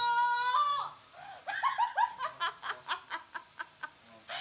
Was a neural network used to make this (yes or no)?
no